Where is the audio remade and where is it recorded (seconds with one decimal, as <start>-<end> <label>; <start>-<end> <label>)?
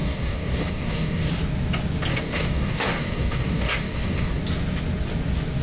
0.0-1.3 remade; 1.3-2.1 recorded; 2.1-4.4 remade; 4.4-5.6 recorded